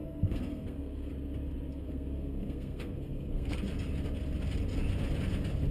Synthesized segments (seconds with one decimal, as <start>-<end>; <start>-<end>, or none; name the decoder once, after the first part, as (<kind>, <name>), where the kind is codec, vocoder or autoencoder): 0.0-1.1 (codec, SNAC); 1.7-3.6